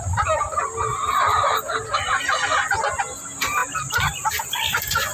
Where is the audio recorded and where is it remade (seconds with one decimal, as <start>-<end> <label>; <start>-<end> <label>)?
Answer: 0.0-5.1 recorded